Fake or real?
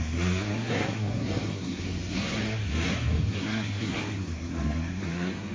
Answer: fake